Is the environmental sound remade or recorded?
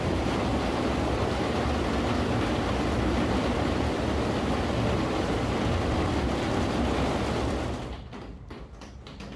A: recorded